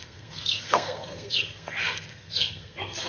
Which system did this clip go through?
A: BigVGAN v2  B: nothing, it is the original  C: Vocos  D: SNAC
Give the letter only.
D